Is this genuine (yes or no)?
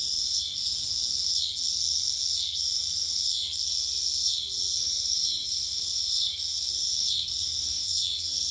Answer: no